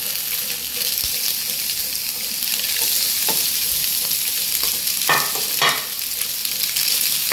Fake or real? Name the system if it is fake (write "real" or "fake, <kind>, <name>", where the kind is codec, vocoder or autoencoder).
real